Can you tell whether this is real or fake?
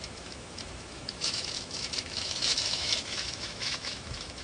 fake